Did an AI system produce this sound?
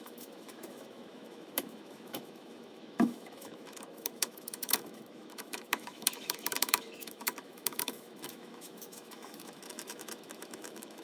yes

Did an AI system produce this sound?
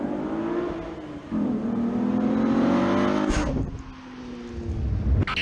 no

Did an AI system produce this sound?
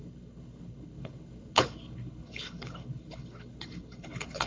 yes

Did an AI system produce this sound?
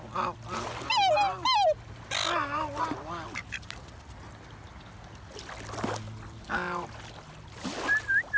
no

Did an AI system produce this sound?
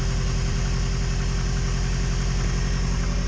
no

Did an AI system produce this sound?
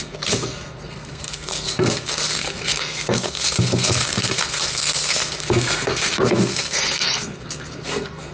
yes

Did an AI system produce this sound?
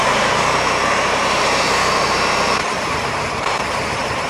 yes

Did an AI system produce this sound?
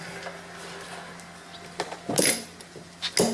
no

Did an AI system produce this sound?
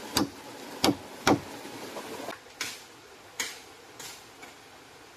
no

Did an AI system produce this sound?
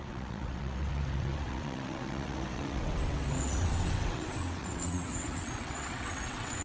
yes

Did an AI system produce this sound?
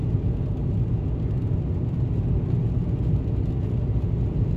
no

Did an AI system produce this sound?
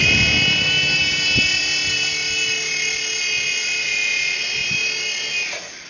no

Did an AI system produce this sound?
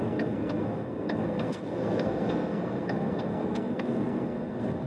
yes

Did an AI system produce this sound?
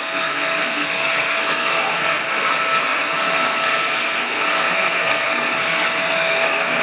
yes